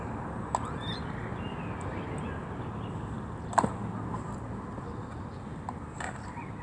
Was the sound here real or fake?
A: real